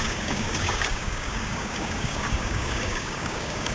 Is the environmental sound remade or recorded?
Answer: remade